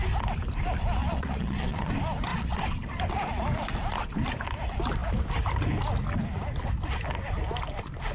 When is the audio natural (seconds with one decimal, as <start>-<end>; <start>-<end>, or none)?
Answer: 0.0-1.0; 1.9-2.3; 2.9-8.1